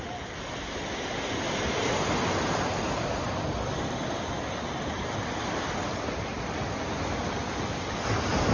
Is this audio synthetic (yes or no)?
no